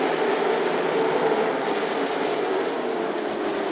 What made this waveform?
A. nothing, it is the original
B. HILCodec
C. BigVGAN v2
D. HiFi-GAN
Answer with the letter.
A